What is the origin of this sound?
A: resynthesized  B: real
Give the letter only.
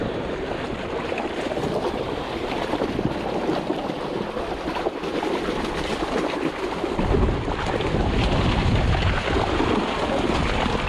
B